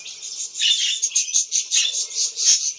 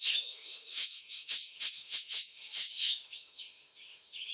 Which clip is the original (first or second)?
first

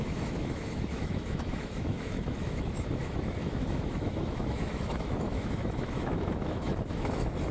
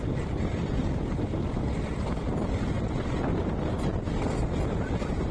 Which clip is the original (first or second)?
second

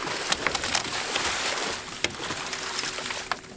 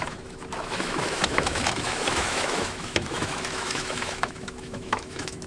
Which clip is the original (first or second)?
first